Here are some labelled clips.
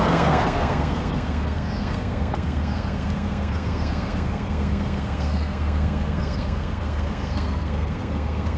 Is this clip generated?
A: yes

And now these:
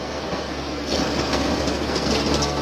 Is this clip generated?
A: yes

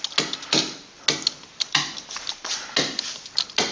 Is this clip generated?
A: no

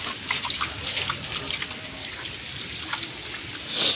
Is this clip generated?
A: no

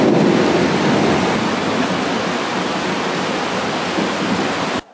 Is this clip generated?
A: no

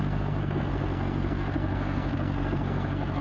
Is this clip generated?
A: yes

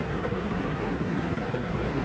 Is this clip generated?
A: yes